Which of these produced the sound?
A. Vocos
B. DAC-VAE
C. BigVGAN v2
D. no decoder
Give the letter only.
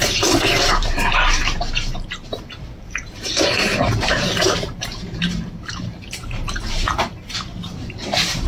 C